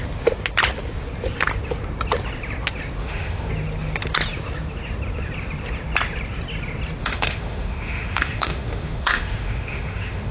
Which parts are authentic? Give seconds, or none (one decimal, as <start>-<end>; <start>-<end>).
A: 0.0-3.0; 3.5-7.0